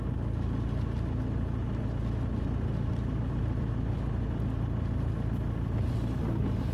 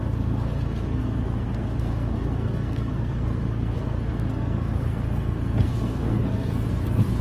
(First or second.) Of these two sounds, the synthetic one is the second